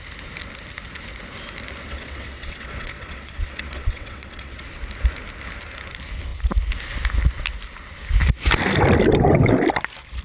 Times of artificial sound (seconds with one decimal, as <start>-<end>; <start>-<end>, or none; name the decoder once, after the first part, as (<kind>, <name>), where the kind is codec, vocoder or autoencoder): 1.8-4.6 (vocoder, WaveNeXt)